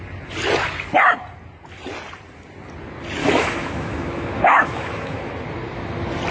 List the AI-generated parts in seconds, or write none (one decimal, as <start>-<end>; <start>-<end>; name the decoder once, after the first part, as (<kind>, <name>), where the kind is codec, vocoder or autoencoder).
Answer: 3.2-5.3 (autoencoder, DAC-VAE)

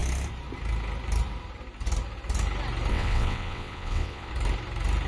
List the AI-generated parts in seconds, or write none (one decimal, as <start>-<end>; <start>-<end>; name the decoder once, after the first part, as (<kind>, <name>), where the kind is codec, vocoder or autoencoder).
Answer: 2.9-4.3 (vocoder, WaveNeXt)

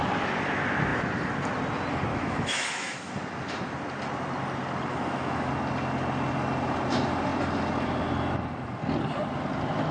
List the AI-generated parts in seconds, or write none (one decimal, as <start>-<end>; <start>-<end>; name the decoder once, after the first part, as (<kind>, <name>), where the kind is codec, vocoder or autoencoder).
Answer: 2.1-3.1 (autoencoder, DAC-VAE); 4.9-5.5